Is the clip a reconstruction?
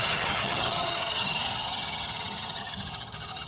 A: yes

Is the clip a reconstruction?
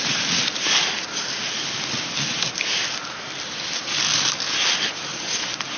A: no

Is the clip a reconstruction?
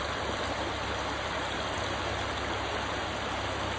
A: no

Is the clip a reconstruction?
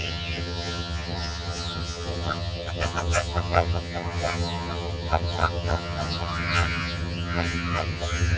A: yes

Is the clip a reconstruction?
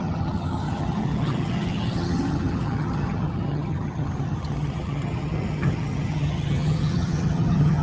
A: yes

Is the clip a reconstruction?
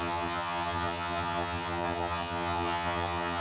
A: yes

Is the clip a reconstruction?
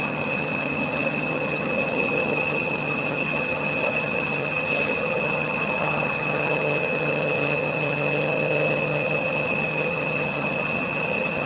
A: yes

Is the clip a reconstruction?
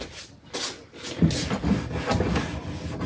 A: no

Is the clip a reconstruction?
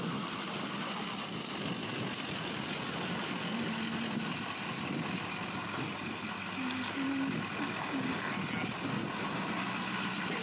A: no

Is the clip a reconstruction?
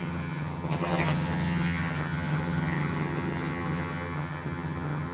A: yes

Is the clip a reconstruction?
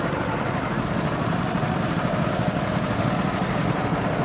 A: no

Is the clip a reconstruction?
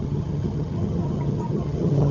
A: yes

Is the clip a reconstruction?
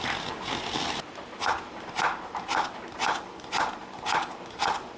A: no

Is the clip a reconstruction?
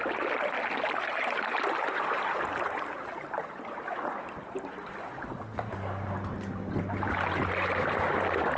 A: no